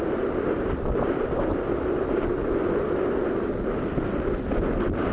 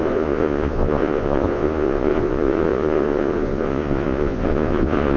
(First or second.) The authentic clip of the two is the first